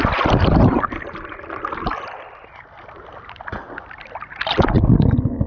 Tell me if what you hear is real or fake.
real